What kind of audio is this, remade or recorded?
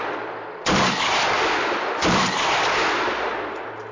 remade